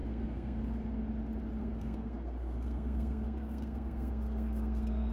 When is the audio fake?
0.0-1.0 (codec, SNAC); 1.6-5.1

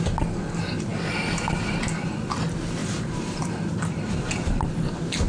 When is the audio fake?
2.8-5.3 (vocoder, BigVGAN v2)

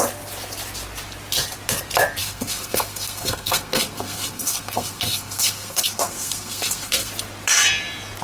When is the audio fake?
2.2-7.1 (codec, SNAC)

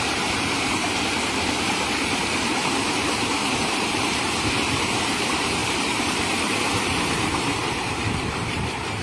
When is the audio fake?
0.0-9.0 (vocoder, BigVGAN v2)

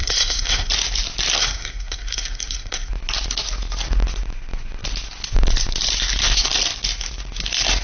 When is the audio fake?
0.0-0.7 (codec, SNAC); 1.4-2.9